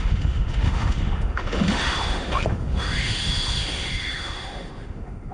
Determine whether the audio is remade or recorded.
remade